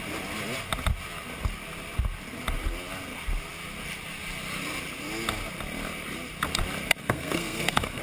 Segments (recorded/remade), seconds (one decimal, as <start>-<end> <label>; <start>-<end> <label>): 0.0-7.0 recorded; 7.0-8.0 remade

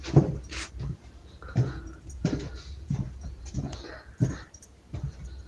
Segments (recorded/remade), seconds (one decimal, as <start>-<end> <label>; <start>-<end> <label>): 0.0-1.2 recorded; 1.2-3.9 remade; 3.9-5.5 recorded

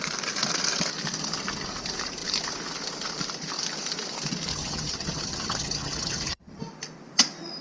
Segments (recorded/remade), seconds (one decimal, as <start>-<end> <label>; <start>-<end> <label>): 0.0-4.5 recorded; 4.5-6.6 remade; 6.6-7.6 recorded

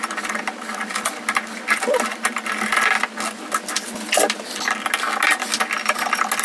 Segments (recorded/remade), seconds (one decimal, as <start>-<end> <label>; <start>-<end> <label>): 0.0-6.4 recorded